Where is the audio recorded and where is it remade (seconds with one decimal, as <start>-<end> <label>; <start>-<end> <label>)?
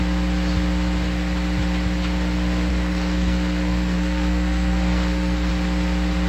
0.0-2.7 recorded; 2.7-5.5 remade; 5.5-6.3 recorded